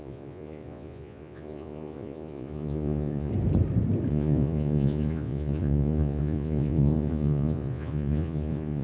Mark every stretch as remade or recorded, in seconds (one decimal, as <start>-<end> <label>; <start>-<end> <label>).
0.0-3.3 remade; 3.3-4.1 recorded; 4.1-8.8 remade